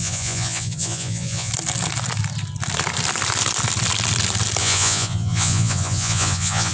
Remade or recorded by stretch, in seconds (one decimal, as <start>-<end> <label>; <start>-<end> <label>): 0.0-1.5 remade; 1.5-4.6 recorded; 4.6-6.7 remade